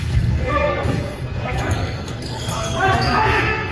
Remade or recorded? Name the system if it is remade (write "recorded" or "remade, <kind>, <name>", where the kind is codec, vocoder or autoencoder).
remade, codec, SNAC